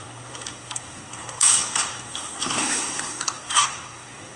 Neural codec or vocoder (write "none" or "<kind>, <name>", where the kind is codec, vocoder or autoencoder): codec, SNAC